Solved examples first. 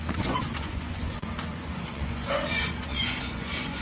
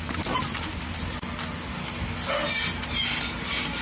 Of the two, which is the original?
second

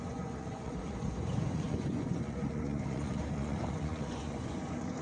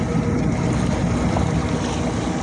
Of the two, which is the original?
second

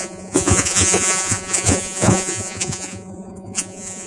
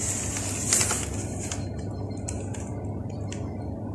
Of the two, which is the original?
second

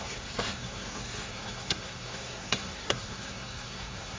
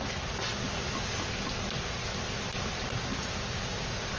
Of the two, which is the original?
second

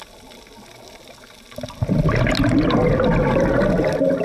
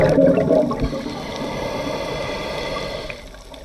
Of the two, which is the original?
first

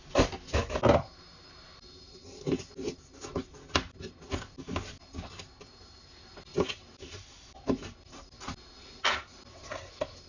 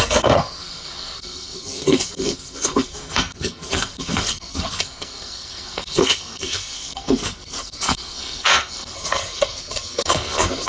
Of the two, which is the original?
first